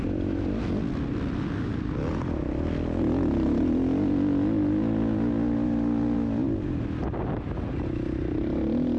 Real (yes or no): yes